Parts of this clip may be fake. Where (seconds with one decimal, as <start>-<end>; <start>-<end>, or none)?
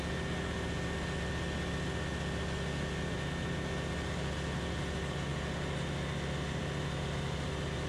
none